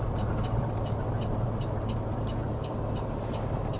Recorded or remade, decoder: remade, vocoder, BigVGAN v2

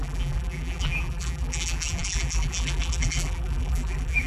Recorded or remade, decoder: remade, vocoder, BigVGAN v2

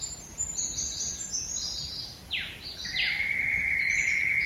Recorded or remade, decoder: recorded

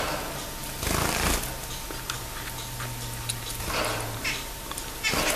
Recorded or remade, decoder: recorded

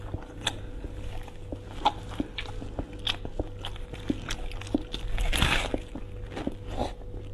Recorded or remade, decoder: recorded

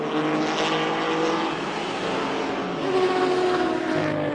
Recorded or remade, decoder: recorded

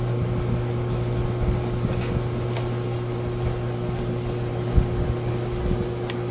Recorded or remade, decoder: recorded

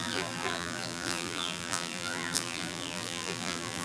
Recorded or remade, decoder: remade, vocoder, BigVGAN v2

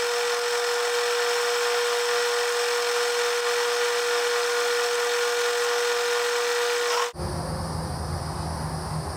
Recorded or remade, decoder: recorded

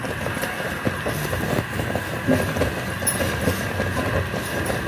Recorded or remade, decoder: recorded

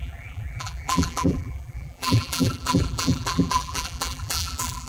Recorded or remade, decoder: remade, vocoder, BigVGAN v2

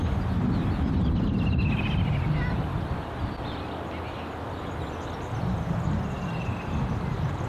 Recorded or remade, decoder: recorded